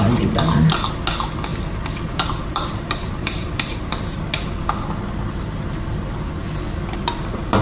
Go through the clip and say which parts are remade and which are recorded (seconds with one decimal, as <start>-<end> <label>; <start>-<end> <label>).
0.0-1.5 recorded; 1.5-4.2 remade; 4.2-7.6 recorded